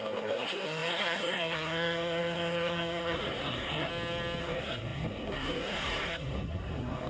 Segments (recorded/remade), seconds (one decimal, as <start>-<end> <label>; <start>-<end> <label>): 0.0-3.9 remade; 3.9-4.4 recorded; 4.4-7.1 remade